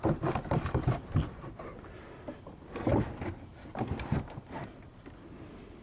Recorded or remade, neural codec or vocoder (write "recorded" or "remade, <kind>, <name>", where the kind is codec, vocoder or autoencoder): recorded